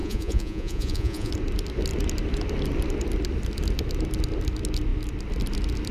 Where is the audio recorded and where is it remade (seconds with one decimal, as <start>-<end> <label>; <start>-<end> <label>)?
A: 0.0-1.3 remade; 1.3-5.9 recorded